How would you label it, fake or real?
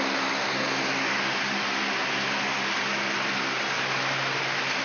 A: real